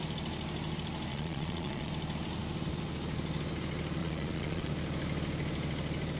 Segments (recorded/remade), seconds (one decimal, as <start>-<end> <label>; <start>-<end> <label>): 0.0-1.1 recorded; 1.1-1.9 remade; 1.9-4.0 recorded; 4.0-4.7 remade; 4.7-6.2 recorded